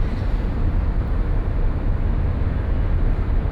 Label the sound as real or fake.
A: real